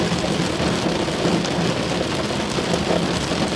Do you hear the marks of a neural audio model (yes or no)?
yes